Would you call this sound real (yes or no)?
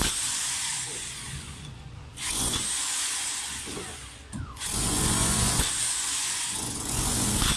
no